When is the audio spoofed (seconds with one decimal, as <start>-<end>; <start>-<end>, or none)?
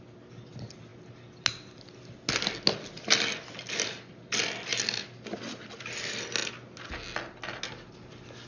none